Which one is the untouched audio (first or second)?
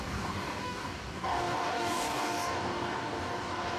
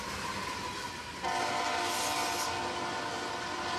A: second